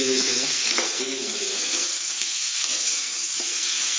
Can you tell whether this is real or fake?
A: fake